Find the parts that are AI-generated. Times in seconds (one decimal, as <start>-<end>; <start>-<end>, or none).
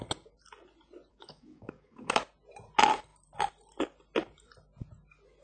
1.1-2.2